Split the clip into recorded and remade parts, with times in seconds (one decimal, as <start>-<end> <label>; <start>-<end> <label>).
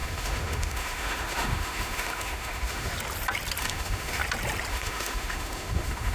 0.0-2.9 remade; 2.9-3.6 recorded; 3.6-4.2 remade; 4.2-4.7 recorded; 4.7-6.1 remade